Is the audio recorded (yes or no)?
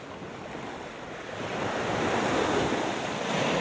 yes